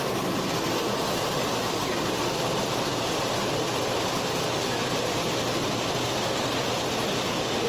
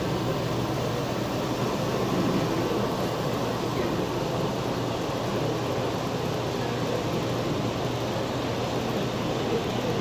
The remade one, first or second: first